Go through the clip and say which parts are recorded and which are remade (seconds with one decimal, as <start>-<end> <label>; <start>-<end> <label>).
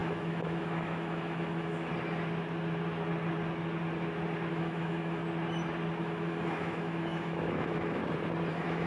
0.0-1.9 remade; 1.9-4.5 recorded; 4.5-5.2 remade; 5.2-6.0 recorded; 6.0-8.0 remade; 8.0-8.5 recorded; 8.5-8.9 remade